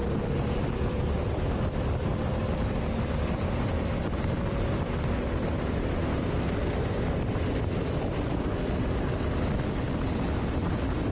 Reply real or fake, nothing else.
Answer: real